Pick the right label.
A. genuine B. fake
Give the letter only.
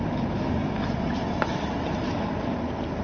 A